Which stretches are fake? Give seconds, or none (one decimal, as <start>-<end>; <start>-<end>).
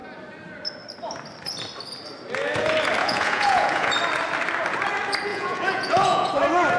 3.0-3.9; 5.3-6.3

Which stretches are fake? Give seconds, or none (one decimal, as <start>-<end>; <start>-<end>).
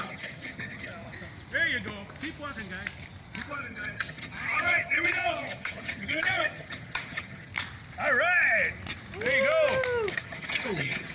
0.0-0.9; 3.5-7.5; 10.1-11.1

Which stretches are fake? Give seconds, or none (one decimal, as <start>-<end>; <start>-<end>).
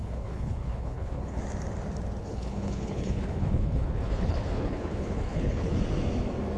0.0-1.4; 2.2-5.8